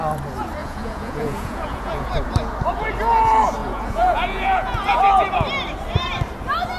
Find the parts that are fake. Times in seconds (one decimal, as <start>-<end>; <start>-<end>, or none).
0.6-2.1; 3.6-5.0